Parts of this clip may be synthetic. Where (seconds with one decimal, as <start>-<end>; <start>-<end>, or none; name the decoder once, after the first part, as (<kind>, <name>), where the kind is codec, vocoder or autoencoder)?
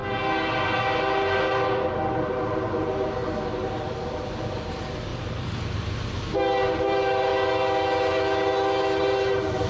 2.2-3.2 (vocoder, BigVGAN v2); 4.0-7.3; 9.0-9.7